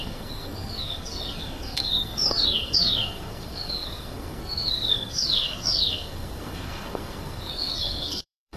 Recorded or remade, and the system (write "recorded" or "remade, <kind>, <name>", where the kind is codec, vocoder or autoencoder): remade, codec, SNAC